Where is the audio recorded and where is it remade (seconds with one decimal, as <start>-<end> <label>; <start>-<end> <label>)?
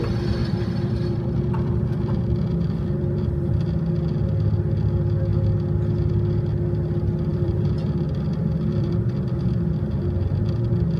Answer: 0.0-0.4 recorded; 0.4-3.6 remade; 3.6-7.3 recorded; 7.3-8.9 remade; 8.9-11.0 recorded